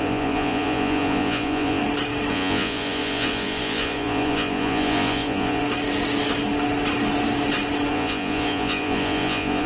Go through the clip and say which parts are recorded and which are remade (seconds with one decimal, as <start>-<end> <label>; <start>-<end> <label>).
0.0-1.8 remade; 1.8-2.3 recorded; 2.3-5.6 remade; 5.6-7.9 recorded; 7.9-9.7 remade